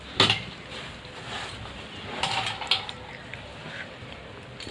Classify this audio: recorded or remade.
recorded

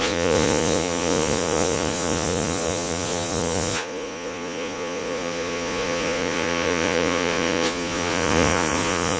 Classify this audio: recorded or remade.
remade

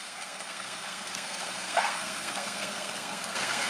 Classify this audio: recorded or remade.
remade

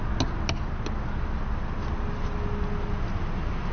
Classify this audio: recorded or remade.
recorded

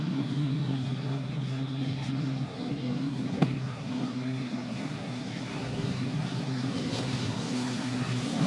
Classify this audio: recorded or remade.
remade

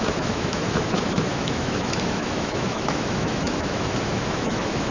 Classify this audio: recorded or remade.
remade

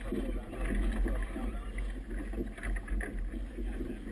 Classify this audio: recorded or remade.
recorded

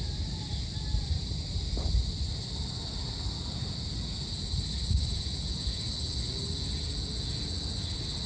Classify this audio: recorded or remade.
recorded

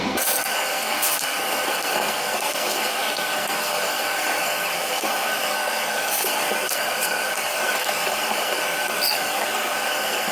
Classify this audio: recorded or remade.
remade